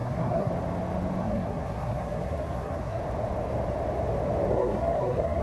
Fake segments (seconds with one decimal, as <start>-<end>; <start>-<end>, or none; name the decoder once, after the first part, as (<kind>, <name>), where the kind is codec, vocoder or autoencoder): 0.0-0.5 (codec, SNAC); 1.2-3.0; 4.5-5.4